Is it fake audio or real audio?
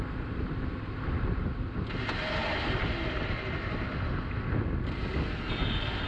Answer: real